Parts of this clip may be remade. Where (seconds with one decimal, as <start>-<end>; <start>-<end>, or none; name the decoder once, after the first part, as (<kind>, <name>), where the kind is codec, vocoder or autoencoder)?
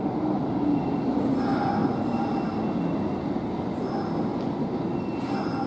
none